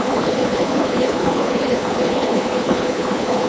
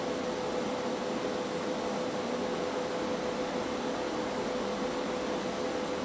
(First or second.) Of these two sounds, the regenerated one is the first